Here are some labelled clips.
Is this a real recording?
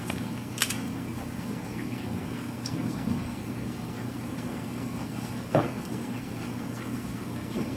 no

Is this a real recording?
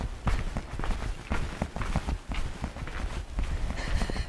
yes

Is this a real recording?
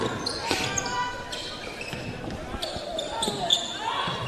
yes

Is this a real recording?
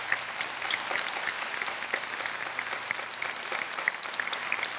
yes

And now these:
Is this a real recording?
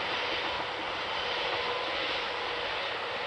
yes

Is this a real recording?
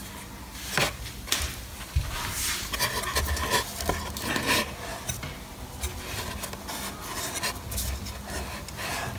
yes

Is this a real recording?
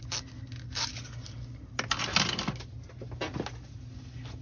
yes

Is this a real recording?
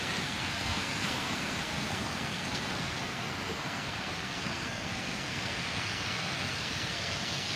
no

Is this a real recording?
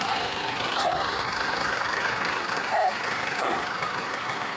no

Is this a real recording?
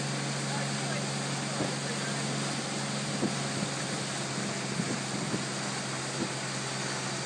yes